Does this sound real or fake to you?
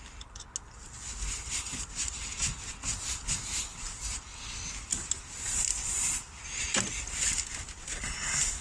real